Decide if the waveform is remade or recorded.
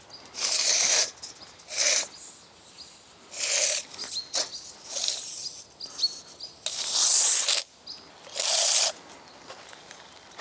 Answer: recorded